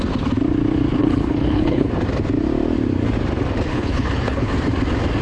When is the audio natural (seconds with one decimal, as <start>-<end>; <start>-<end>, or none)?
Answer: 0.0-1.0; 1.9-3.7; 4.5-5.2